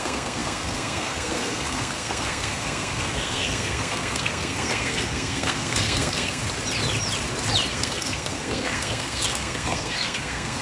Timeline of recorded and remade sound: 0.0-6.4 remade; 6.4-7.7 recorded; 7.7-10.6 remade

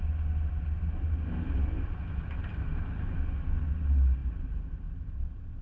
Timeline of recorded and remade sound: 0.0-5.6 recorded

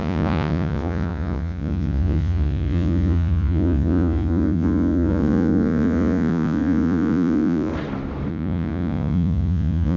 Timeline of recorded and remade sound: 0.0-7.7 remade; 7.7-8.3 recorded; 8.3-10.0 remade

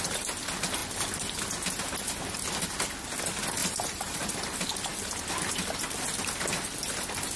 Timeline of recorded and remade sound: 0.0-3.6 recorded; 3.6-4.3 remade; 4.3-7.4 recorded

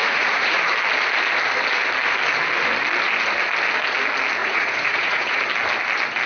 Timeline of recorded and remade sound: 0.0-0.6 remade; 0.6-4.4 recorded; 4.4-5.4 remade; 5.4-6.3 recorded

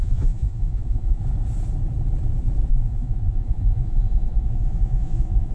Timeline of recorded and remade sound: 0.0-1.2 remade; 1.2-2.7 recorded; 2.7-5.5 remade

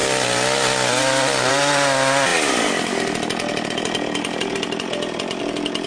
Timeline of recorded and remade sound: 0.0-5.9 recorded

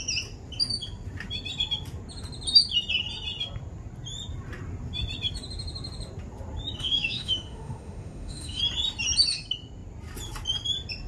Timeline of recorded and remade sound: 0.0-6.8 recorded; 6.8-8.6 remade; 8.6-11.1 recorded